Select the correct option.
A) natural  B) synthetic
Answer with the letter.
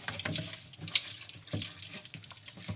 B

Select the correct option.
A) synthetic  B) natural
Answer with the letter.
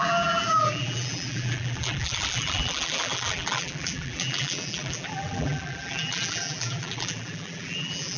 A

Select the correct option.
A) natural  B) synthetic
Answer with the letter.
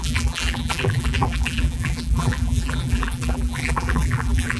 B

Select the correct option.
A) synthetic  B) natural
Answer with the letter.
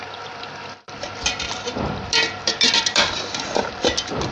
A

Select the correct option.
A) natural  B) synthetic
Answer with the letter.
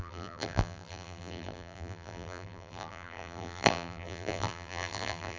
B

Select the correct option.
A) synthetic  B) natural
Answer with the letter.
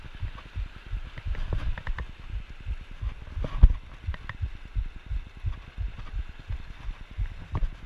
B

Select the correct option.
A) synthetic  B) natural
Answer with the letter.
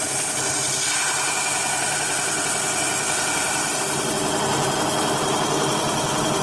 B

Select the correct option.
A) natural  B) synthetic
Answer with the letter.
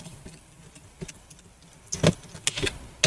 A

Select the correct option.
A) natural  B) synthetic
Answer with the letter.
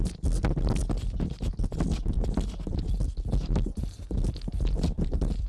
A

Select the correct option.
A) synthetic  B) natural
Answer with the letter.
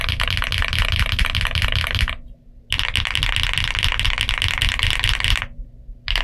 B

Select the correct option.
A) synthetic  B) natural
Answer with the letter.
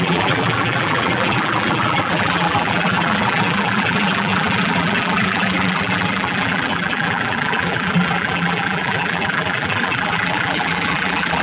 A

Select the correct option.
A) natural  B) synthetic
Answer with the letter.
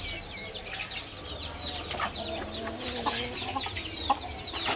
A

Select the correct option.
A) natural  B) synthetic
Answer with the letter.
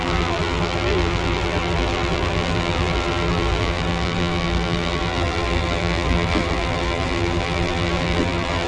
B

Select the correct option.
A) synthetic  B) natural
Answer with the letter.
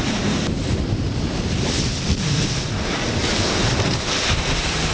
A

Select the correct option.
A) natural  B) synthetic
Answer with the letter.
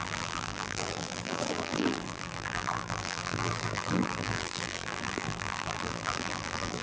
B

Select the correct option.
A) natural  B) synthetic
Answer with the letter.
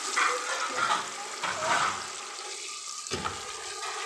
A